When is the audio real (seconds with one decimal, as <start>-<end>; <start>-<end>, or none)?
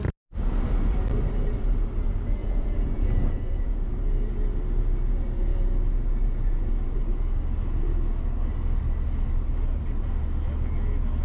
0.0-2.4; 3.7-11.2